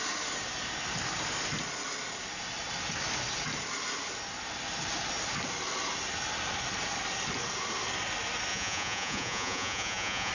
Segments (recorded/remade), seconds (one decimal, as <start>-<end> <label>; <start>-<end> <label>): 0.0-8.5 recorded; 8.5-10.3 remade